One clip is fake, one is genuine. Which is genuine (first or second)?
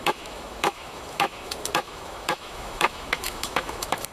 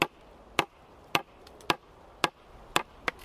second